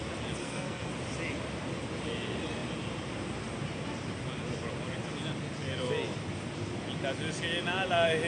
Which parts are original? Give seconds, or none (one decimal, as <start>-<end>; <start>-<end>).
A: 0.0-0.4; 0.9-8.3

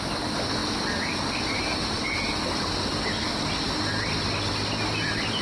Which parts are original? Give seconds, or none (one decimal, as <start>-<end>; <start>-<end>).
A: 0.0-5.4

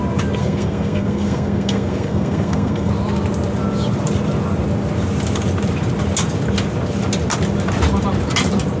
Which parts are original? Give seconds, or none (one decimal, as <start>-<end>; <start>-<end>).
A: 0.0-0.4; 2.9-8.8

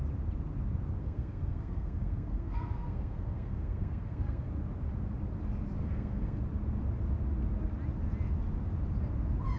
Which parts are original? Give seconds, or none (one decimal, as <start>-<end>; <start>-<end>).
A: 0.0-1.0; 4.5-5.8; 6.4-9.6

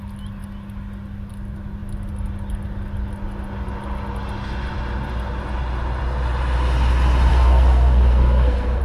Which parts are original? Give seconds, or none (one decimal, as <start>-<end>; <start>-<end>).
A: 0.0-7.3

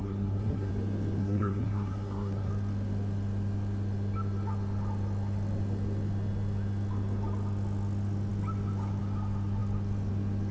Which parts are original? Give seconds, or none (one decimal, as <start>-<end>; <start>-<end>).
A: 0.7-1.2; 2.5-10.5

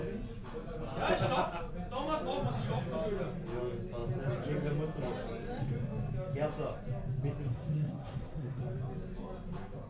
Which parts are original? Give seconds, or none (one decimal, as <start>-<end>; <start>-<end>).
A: 0.0-7.5; 8.6-9.9

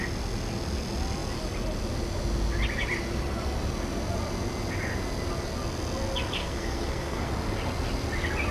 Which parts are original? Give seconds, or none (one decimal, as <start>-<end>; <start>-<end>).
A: 0.0-6.4; 7.3-8.5